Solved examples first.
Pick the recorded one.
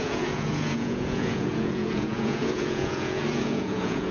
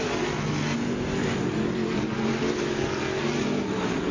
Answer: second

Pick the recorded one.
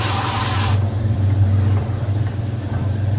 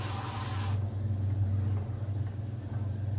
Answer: second